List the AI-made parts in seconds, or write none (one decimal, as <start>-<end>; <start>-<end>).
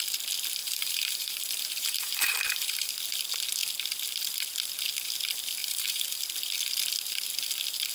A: 0.6-2.9; 5.6-6.2